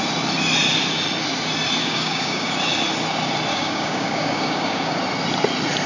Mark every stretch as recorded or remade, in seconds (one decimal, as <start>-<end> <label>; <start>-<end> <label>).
0.0-1.8 recorded; 1.8-2.5 remade; 2.5-3.5 recorded; 3.5-5.0 remade; 5.0-5.9 recorded